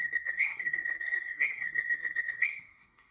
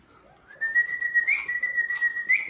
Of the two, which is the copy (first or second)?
first